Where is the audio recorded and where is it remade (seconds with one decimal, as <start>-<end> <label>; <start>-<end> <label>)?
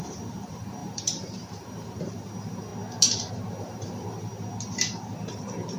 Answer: 0.0-2.7 remade; 2.7-3.3 recorded; 3.3-4.3 remade; 4.3-5.3 recorded; 5.3-5.8 remade